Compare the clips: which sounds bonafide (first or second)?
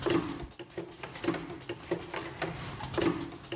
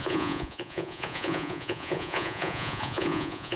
first